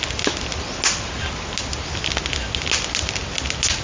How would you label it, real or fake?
real